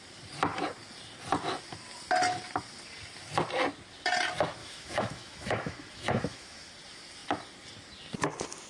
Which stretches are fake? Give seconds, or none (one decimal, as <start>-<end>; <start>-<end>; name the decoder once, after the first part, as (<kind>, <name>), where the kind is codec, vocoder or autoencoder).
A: 4.6-6.7 (autoencoder, DAC-VAE)